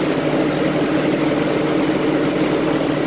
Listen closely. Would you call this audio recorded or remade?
recorded